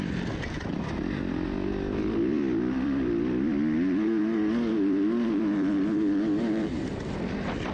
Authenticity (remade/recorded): remade